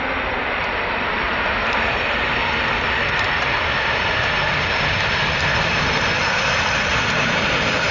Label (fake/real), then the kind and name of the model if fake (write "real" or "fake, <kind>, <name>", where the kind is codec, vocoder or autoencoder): real